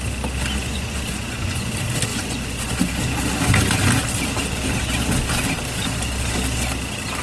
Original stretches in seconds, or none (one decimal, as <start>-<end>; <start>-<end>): 0.0-0.6; 1.7-2.1; 2.9-7.2